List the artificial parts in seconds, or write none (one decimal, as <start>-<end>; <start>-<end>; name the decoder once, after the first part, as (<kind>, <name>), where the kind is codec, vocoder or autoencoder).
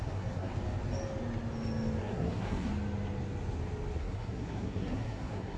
0.0-0.5 (codec, SNAC); 2.0-2.7; 4.0-5.6